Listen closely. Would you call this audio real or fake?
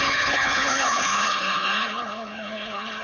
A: fake